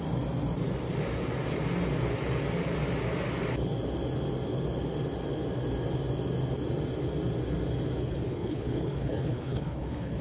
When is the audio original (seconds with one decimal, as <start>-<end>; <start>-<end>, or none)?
0.0-8.0

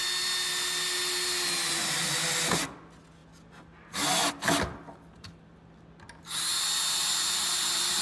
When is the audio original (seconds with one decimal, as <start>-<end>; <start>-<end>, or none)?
0.0-8.0

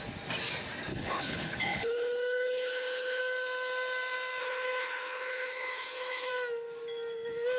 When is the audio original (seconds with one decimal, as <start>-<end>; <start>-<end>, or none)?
0.0-0.9; 3.2-4.4; 6.3-7.6

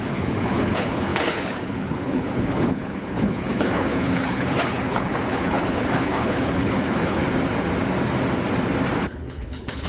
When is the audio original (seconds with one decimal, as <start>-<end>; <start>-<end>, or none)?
7.2-9.0

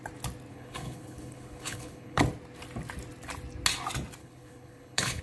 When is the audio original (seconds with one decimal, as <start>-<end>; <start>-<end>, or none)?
0.0-0.5; 2.2-4.2